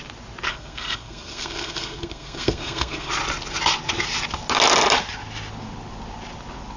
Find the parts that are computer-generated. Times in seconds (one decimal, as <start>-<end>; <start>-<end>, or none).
0.5-3.1

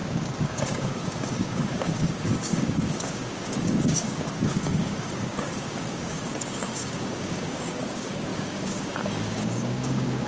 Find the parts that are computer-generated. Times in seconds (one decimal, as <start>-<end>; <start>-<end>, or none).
0.0-10.3

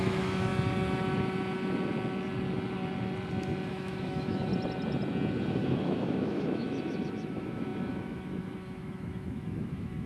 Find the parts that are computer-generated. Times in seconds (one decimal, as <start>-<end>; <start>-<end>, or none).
0.0-0.5; 3.7-4.5; 5.5-10.1

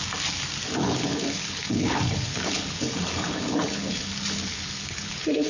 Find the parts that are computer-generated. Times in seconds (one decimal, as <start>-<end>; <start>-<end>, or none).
0.8-4.1; 4.5-5.5

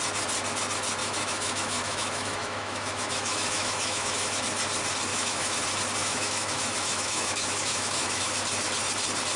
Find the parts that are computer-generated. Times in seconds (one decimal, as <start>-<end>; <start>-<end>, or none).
1.0-4.4; 5.1-5.6; 6.0-8.3

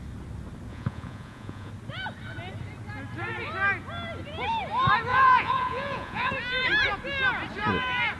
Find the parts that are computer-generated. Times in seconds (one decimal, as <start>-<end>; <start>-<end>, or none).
0.7-1.7; 5.1-6.3

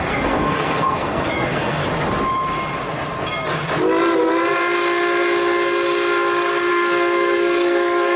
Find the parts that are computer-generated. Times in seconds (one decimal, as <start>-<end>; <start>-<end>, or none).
0.0-1.8; 6.7-8.2